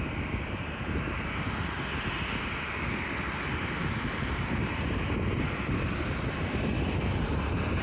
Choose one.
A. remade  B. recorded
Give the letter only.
B